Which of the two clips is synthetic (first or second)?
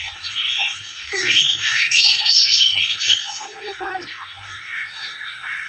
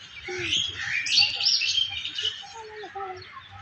first